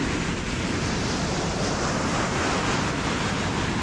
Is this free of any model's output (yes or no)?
yes